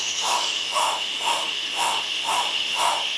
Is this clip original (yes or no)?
no